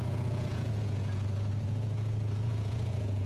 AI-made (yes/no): yes